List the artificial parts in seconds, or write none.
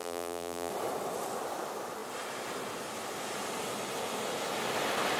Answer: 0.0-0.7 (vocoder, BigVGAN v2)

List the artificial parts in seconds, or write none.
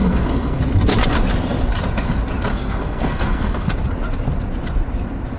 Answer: 0.0-0.6 (codec, SNAC); 2.5-3.7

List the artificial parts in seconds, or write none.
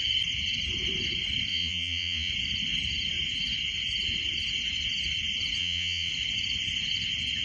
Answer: 1.5-2.3 (vocoder, Vocos); 5.6-6.1